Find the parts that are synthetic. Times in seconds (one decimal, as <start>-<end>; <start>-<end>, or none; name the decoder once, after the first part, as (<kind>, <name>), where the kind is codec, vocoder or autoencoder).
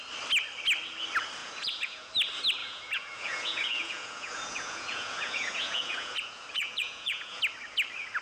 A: 1.4-2.1 (vocoder, Vocos); 2.6-7.4